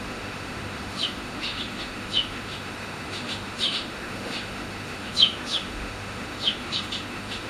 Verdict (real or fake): fake